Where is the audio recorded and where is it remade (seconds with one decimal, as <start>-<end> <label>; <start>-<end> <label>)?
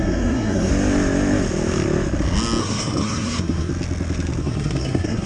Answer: 0.0-0.7 remade; 0.7-2.6 recorded; 2.6-3.7 remade; 3.7-4.4 recorded; 4.4-5.3 remade